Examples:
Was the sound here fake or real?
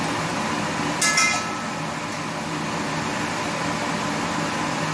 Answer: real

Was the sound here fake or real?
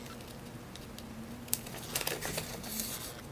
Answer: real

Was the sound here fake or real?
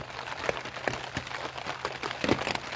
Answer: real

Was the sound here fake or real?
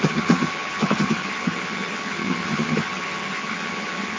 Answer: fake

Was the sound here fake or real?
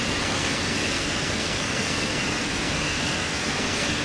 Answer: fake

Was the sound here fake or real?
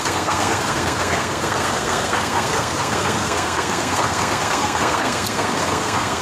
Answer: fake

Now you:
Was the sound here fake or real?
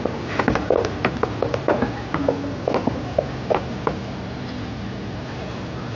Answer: real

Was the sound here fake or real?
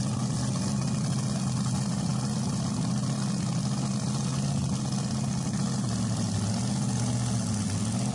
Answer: real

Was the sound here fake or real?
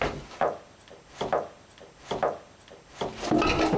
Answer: real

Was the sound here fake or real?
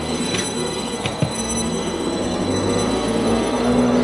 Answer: fake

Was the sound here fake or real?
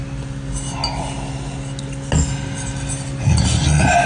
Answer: real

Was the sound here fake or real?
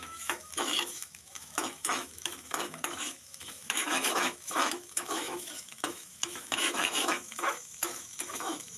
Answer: fake